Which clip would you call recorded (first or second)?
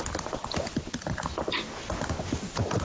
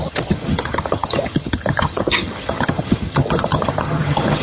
first